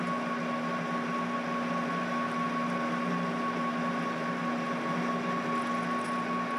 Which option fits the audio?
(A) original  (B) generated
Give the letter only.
A